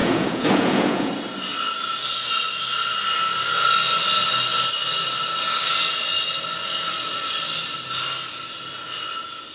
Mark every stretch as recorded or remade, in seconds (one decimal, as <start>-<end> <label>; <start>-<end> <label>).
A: 0.0-1.1 remade; 1.1-9.5 recorded